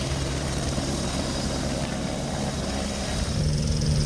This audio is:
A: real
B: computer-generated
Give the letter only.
B